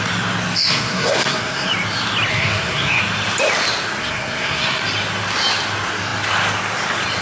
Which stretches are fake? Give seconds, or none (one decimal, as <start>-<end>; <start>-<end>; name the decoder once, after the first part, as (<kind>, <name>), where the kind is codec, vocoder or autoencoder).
0.7-1.7 (codec, SNAC); 2.3-3.0; 4.0-4.8